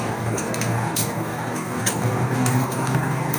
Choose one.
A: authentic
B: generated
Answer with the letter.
B